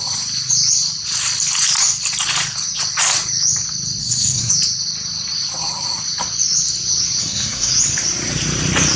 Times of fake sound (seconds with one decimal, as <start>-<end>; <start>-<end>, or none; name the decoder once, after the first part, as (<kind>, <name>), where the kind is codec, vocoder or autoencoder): 4.0-4.5 (codec, SNAC); 7.2-7.7